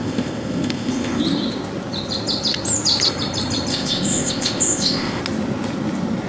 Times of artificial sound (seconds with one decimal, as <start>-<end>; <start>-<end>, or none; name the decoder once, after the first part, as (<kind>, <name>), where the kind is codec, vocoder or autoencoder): 0.0-1.2 (codec, ZipCodec); 3.7-5.2